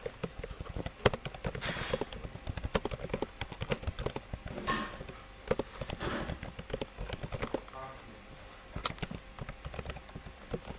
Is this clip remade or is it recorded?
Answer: recorded